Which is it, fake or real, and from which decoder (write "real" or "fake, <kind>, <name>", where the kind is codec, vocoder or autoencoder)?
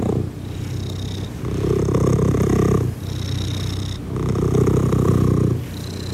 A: real